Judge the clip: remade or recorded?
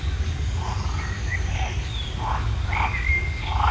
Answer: remade